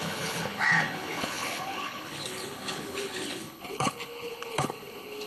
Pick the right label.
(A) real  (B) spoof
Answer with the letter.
B